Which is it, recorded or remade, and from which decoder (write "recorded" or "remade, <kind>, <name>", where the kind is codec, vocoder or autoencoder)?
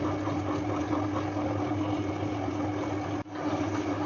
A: recorded